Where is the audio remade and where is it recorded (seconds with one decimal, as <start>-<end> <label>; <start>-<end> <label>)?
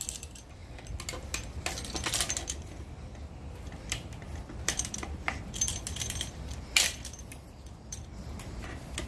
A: 0.0-0.6 remade; 0.6-3.4 recorded; 3.4-9.1 remade